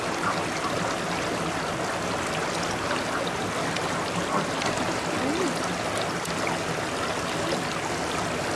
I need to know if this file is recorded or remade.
recorded